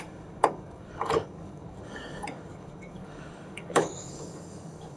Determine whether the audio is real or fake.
fake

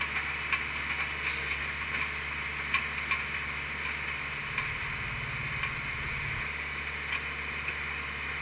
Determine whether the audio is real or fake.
real